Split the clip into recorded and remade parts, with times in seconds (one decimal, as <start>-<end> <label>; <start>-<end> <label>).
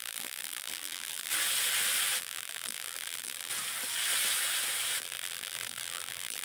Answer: 0.0-1.3 remade; 1.3-2.2 recorded; 2.2-3.5 remade; 3.5-5.0 recorded; 5.0-6.4 remade